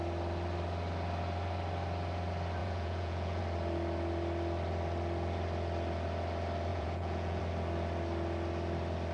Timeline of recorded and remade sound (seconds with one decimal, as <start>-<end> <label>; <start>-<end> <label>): 0.0-2.6 recorded; 2.6-3.4 remade; 3.4-6.7 recorded; 6.7-7.4 remade; 7.4-9.1 recorded